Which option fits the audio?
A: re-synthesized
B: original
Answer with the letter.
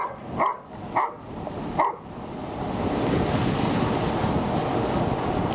B